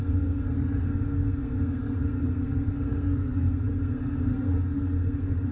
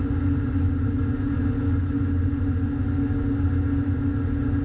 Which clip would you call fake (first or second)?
first